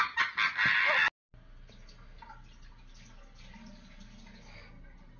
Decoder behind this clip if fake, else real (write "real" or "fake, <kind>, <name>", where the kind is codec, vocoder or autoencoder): real